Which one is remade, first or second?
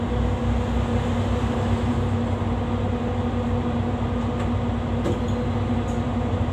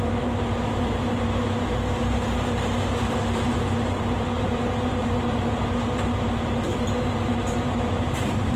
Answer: second